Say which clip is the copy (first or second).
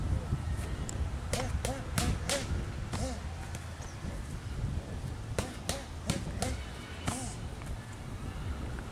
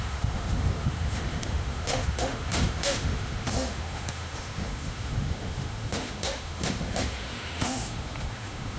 second